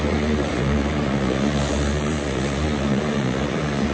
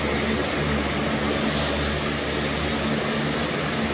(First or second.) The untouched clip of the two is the second